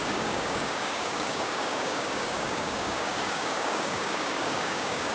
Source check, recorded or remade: remade